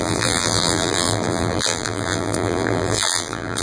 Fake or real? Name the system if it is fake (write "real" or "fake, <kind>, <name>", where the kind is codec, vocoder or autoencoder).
fake, vocoder, BigVGAN v2